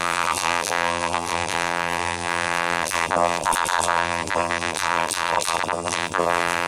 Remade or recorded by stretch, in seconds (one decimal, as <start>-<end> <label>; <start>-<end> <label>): 0.0-6.7 remade